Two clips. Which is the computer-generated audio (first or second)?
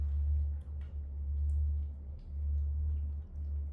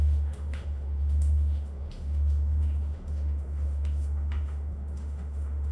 second